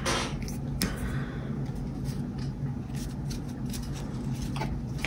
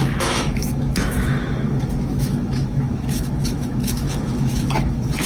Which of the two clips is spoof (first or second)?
second